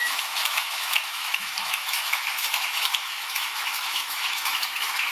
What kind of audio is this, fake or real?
fake